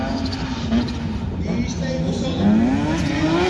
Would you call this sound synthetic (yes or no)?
no